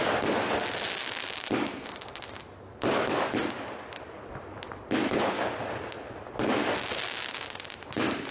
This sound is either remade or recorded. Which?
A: recorded